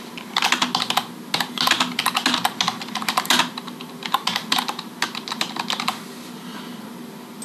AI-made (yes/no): no